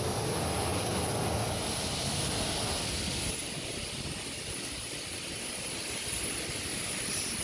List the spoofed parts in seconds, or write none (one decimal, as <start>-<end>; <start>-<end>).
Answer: none